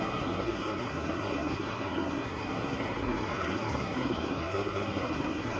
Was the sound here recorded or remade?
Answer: remade